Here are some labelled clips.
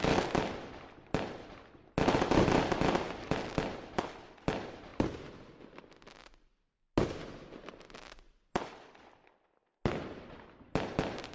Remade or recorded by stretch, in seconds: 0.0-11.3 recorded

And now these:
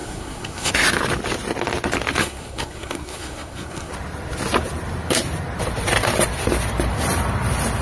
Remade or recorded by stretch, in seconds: 0.0-0.7 remade; 0.7-2.2 recorded; 2.2-3.9 remade; 3.9-7.8 recorded